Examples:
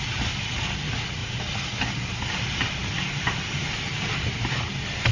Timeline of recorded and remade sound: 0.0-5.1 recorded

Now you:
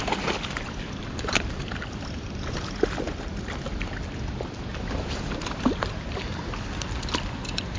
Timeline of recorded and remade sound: 0.0-4.7 recorded; 4.7-6.2 remade; 6.2-7.8 recorded

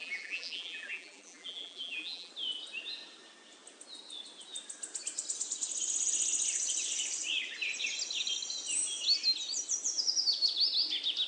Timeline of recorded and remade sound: 0.0-2.3 remade; 2.3-11.3 recorded

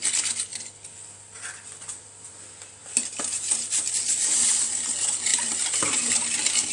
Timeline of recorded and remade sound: 0.0-2.8 recorded; 2.8-3.9 remade; 3.9-5.3 recorded; 5.3-6.0 remade; 6.0-6.7 recorded

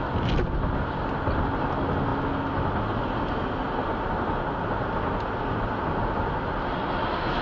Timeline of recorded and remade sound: 0.0-7.4 recorded